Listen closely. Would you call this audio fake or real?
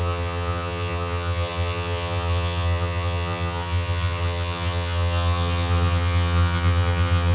fake